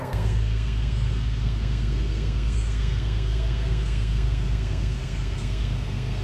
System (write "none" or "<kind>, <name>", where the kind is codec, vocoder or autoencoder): codec, SNAC